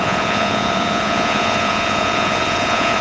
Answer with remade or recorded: remade